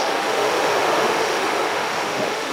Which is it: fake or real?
fake